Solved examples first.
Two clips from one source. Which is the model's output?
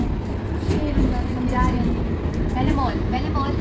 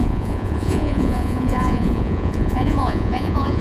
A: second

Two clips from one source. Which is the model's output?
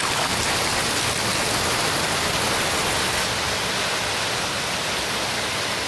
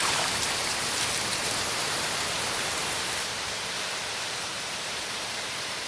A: second